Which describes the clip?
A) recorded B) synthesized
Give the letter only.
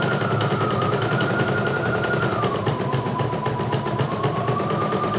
B